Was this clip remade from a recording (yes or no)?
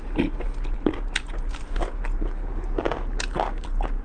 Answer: no